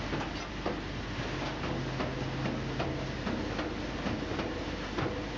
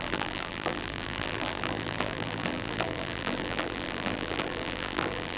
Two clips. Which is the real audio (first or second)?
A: first